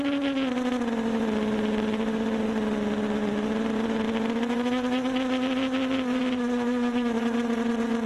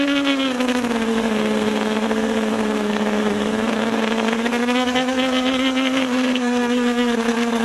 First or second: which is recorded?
first